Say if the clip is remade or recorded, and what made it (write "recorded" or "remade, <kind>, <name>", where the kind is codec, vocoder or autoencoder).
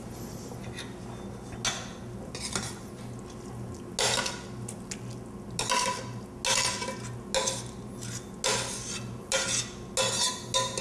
recorded